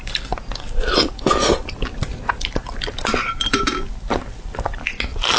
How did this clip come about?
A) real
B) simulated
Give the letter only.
A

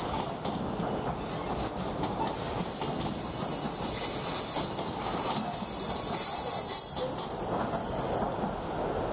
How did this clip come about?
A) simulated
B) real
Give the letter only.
B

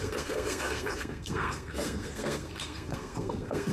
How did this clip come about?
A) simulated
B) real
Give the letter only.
A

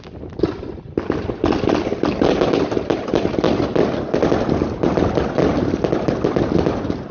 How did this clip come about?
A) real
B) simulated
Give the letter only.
A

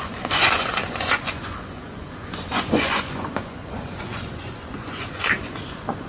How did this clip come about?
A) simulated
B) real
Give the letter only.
A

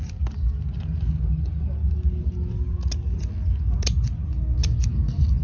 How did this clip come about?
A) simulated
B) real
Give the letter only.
B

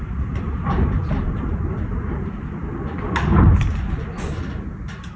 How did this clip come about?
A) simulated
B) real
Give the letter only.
B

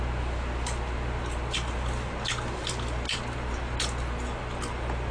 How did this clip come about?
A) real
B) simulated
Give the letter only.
A